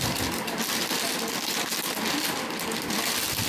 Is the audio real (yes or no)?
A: yes